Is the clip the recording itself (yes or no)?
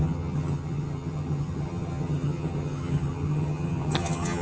no